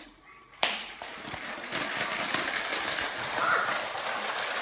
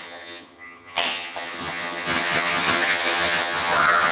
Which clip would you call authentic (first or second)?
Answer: first